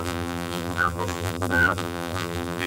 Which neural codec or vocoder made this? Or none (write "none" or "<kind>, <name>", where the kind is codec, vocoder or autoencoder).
vocoder, BigVGAN v2